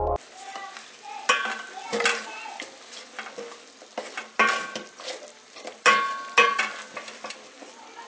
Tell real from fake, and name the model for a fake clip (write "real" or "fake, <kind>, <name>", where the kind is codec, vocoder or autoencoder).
real